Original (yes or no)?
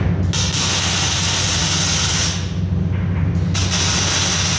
yes